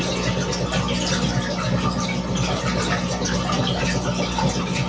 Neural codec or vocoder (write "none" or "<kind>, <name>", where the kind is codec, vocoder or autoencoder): none